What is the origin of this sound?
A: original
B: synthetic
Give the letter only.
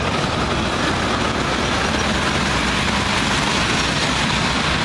A